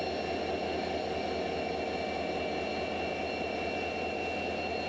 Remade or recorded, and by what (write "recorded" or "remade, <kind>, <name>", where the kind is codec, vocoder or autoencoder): recorded